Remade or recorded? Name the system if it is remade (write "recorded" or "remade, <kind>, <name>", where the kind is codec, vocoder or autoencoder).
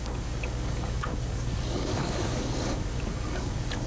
remade, codec, DAC